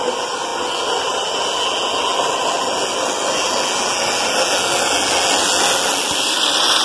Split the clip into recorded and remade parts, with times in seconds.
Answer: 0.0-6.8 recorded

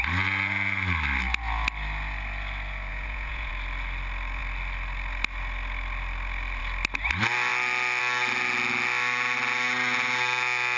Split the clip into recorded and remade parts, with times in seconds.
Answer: 0.0-2.9 recorded; 2.9-3.5 remade; 3.5-10.8 recorded